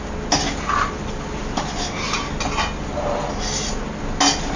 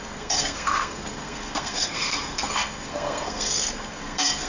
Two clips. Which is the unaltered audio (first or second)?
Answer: first